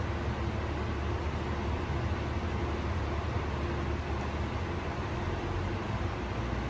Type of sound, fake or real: real